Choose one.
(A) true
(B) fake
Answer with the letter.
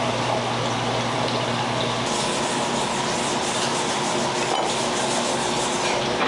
A